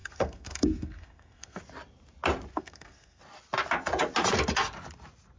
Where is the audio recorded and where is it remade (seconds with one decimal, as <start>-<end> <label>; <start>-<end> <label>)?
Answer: 0.0-1.6 remade; 1.6-2.5 recorded; 2.5-3.2 remade; 3.2-5.4 recorded